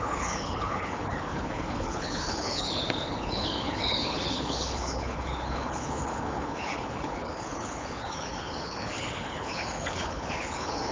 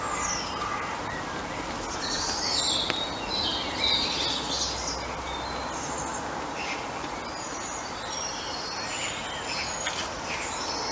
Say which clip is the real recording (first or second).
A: second